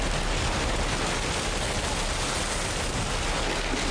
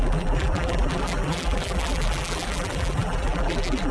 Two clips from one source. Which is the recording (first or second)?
first